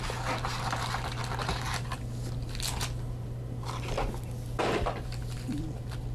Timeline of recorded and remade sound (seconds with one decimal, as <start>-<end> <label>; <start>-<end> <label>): 0.0-6.1 recorded